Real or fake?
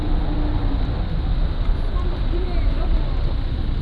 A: real